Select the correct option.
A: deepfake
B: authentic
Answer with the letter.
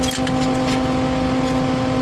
B